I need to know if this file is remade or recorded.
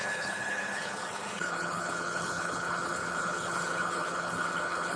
remade